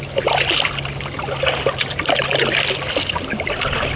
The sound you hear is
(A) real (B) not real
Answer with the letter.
A